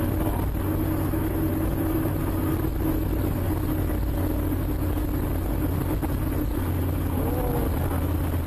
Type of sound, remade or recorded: recorded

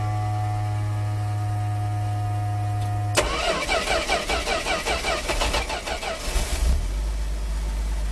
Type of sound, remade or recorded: recorded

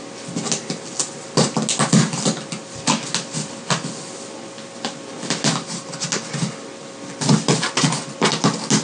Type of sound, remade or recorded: recorded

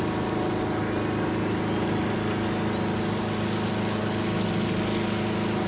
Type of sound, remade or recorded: recorded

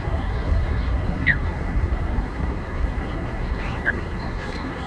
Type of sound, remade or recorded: remade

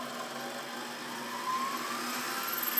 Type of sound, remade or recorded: recorded